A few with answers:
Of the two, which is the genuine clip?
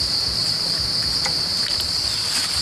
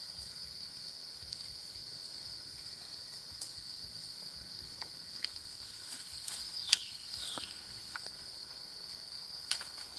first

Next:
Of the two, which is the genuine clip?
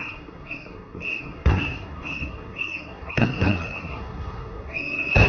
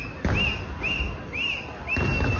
second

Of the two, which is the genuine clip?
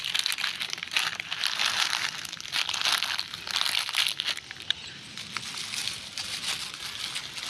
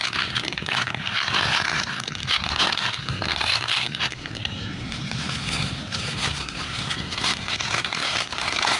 first